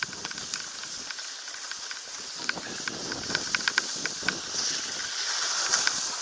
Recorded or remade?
recorded